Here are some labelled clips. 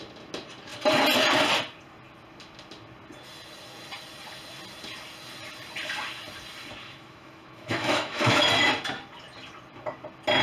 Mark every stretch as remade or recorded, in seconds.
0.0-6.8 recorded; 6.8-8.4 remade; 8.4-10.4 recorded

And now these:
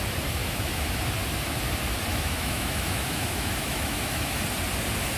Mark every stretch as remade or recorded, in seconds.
0.0-0.4 recorded; 0.4-1.0 remade; 1.0-2.1 recorded; 2.1-4.4 remade; 4.4-5.2 recorded

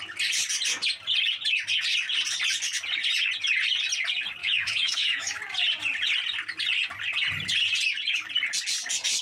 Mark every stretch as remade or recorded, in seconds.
0.0-4.4 recorded; 4.4-5.4 remade; 5.4-9.2 recorded

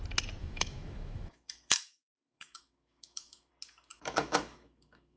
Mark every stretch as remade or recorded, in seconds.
0.0-0.4 recorded; 0.4-3.5 remade; 3.5-3.9 recorded; 3.9-5.2 remade

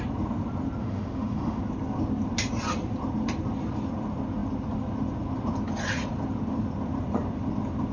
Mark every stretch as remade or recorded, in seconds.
0.0-0.8 recorded; 0.8-1.6 remade; 1.6-7.9 recorded